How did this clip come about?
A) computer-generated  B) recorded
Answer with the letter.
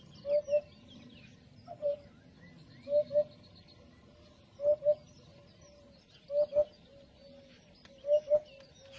B